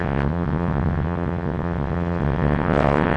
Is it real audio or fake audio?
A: fake